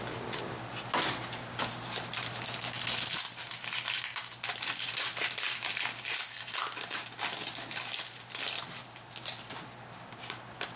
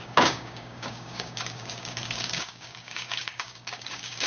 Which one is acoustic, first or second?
first